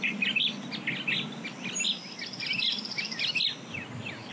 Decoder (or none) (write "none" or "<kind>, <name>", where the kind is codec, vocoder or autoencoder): none